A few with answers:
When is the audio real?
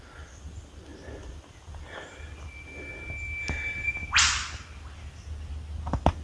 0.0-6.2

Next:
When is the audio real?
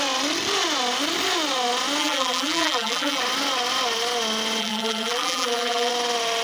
0.0-2.0; 3.2-4.6; 5.9-6.4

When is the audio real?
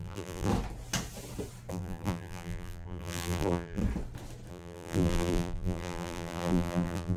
0.5-1.7; 3.8-4.5